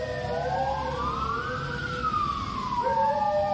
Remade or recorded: recorded